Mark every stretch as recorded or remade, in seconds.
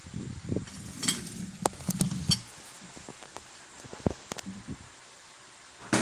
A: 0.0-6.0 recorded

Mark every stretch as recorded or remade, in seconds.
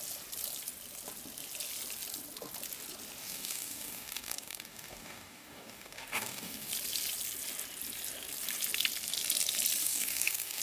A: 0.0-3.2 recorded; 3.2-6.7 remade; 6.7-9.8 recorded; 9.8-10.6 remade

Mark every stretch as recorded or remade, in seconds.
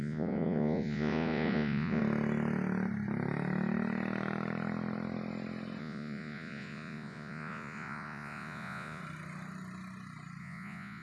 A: 0.0-2.0 remade; 2.0-5.8 recorded; 5.8-9.0 remade; 9.0-10.4 recorded; 10.4-11.0 remade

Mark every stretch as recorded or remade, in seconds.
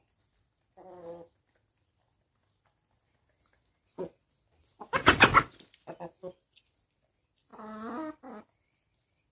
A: 0.0-9.3 recorded